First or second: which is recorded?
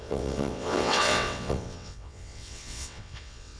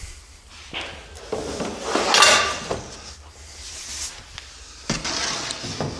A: second